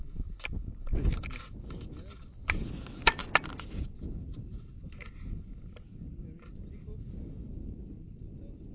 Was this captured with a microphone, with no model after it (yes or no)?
yes